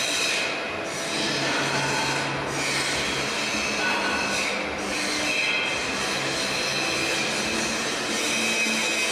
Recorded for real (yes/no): yes